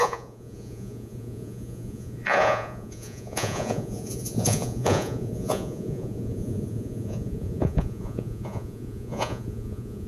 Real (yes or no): no